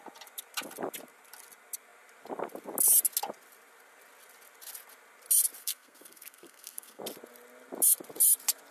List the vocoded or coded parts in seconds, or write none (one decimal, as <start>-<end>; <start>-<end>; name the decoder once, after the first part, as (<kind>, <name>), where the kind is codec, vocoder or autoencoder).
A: 5.6-7.0 (codec, SNAC)